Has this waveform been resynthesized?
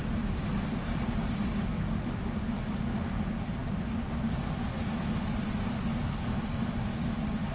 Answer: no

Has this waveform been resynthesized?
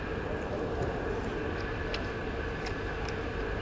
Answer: no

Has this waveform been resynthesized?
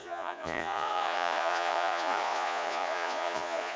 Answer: yes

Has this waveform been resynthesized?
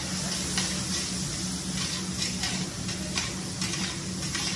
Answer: no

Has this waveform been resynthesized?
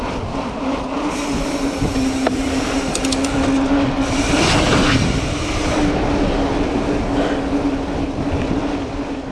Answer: no